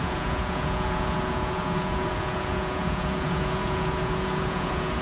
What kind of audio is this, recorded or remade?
remade